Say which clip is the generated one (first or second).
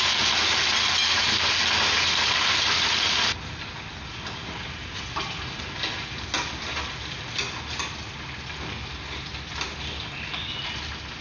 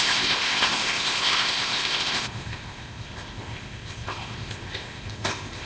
second